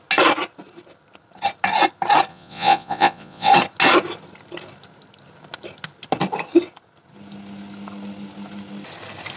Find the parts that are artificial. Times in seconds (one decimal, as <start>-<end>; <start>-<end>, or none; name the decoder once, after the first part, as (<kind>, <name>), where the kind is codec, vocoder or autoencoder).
2.3-3.5 (vocoder, Vocos)